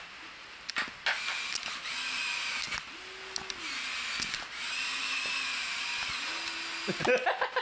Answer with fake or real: real